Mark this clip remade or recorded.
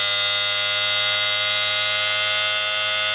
recorded